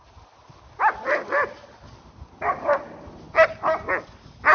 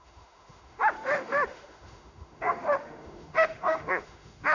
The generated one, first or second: second